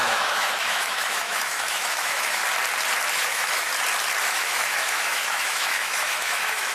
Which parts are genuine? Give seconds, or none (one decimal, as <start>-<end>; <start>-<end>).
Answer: 2.4-3.1; 3.7-4.2